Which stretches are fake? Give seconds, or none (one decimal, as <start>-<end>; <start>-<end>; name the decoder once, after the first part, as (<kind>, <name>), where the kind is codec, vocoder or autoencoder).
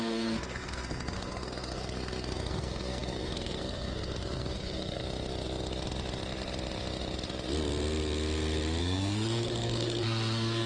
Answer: 0.0-5.0 (codec, SNAC); 8.8-10.7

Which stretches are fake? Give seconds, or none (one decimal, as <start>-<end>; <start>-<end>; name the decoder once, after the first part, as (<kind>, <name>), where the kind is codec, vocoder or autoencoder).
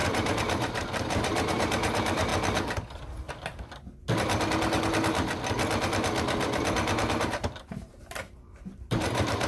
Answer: 0.0-2.3 (vocoder, BigVGAN v2); 7.3-9.5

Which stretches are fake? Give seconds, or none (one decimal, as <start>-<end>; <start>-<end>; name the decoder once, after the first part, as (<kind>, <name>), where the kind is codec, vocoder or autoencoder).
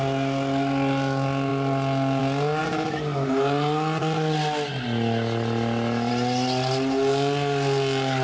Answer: none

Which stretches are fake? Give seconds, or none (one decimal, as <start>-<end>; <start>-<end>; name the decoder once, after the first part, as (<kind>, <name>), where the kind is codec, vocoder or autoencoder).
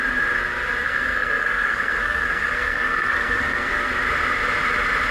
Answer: 0.8-3.9 (codec, SNAC)